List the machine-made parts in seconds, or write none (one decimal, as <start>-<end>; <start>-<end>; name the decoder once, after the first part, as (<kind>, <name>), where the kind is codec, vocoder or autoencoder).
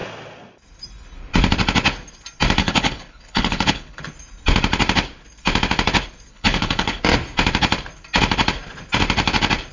2.6-4.0 (codec, HILCodec); 6.3-7.0